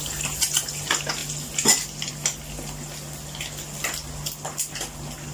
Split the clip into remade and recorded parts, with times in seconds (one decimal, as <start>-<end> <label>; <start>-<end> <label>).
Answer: 0.0-5.3 recorded